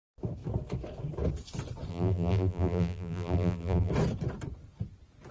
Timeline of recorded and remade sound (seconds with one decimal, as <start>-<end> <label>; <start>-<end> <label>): 0.0-1.9 recorded; 1.9-3.9 remade; 3.9-5.3 recorded